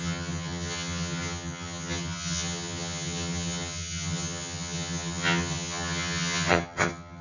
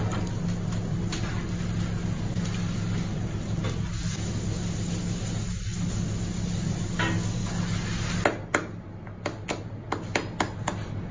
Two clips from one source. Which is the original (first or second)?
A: second